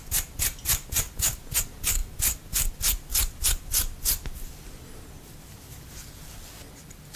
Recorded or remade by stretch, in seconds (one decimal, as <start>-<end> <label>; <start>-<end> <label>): 0.0-7.2 recorded